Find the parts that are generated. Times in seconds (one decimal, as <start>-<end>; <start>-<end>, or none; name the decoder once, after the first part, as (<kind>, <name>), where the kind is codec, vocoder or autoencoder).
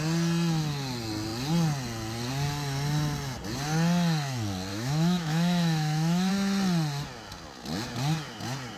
4.7-6.3 (autoencoder, DAC-VAE)